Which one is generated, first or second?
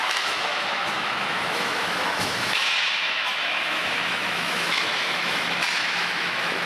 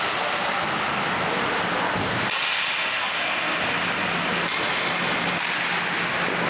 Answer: first